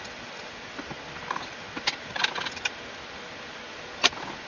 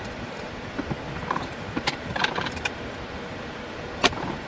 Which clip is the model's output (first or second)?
second